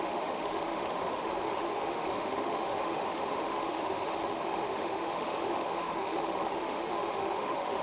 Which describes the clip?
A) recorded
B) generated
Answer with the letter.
B